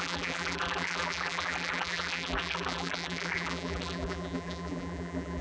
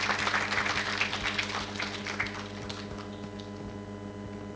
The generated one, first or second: first